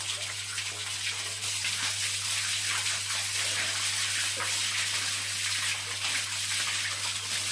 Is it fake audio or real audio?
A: real